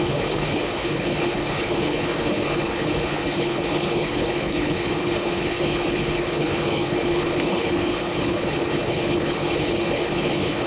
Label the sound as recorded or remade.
remade